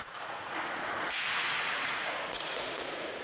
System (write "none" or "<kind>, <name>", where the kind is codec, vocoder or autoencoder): vocoder, Vocos